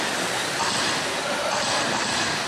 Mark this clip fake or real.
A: real